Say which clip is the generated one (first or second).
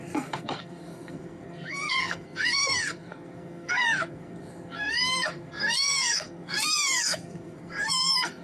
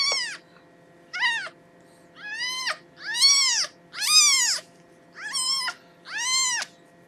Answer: first